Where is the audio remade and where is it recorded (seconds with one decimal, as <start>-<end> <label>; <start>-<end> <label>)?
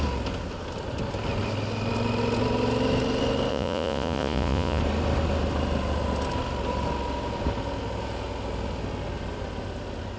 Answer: 0.0-3.5 recorded; 3.5-4.8 remade; 4.8-10.2 recorded